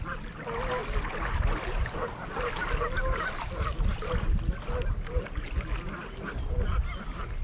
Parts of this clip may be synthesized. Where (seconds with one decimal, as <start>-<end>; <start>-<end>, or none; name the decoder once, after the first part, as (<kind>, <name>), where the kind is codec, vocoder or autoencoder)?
none